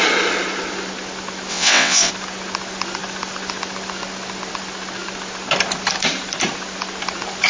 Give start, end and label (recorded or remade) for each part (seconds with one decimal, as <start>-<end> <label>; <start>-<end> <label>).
0.0-1.5 recorded; 1.5-2.1 remade; 2.1-7.5 recorded